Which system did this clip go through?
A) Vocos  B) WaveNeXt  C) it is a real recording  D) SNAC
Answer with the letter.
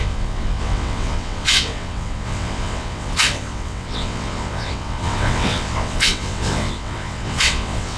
B